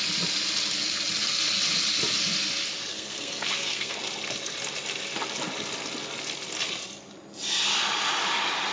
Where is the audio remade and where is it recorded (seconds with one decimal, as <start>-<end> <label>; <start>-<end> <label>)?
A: 0.0-2.9 recorded; 2.9-4.0 remade; 4.0-8.7 recorded